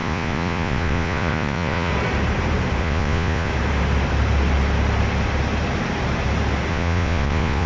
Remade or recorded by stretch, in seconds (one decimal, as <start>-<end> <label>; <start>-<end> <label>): 0.0-1.9 remade; 1.9-2.8 recorded; 2.8-3.5 remade; 3.5-6.7 recorded; 6.7-7.7 remade